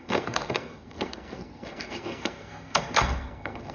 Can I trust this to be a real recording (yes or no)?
no